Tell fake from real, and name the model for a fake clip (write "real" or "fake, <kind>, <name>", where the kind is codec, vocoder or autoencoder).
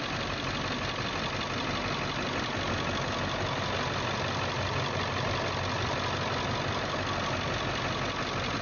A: real